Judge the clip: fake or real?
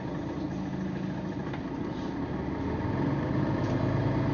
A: real